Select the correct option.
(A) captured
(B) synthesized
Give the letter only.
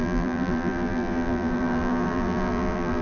B